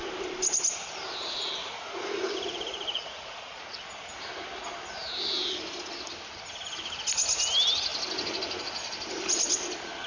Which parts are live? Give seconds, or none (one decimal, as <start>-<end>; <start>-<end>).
0.0-1.6; 3.7-10.1